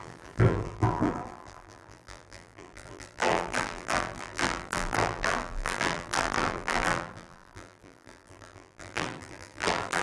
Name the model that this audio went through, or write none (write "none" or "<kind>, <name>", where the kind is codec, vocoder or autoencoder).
vocoder, BigVGAN v2